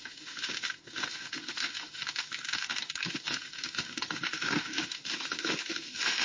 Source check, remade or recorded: remade